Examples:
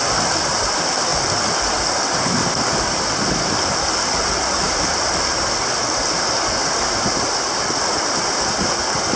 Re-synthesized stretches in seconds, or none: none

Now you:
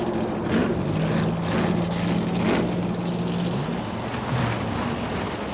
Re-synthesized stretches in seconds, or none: none

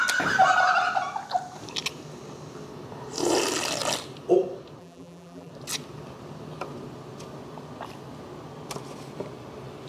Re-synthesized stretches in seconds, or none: 4.8-5.5